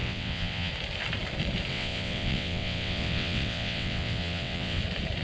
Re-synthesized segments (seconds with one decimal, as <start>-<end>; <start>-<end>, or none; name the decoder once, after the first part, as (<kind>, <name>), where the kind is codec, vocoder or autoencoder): 0.0-0.7 (vocoder, WaveNeXt); 1.7-4.8